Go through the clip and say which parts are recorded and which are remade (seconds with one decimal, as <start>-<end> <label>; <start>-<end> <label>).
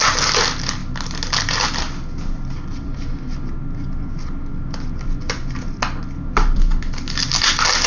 0.0-7.9 recorded